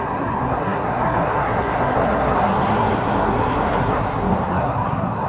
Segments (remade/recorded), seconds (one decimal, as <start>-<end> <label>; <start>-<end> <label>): 0.0-5.3 remade